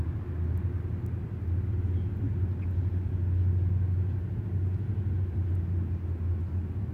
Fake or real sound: real